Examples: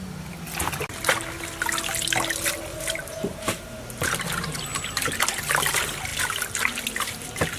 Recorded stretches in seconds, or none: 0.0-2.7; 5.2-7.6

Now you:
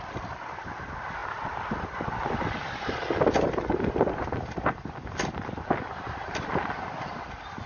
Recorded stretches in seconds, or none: 0.0-7.7

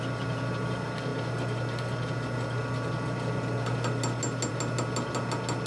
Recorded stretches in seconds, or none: 0.0-5.7

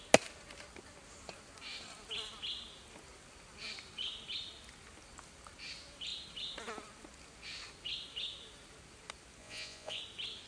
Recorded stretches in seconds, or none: 0.0-9.4; 10.0-10.5

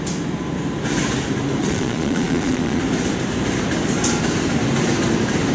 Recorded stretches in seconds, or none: 0.0-1.6; 2.8-5.5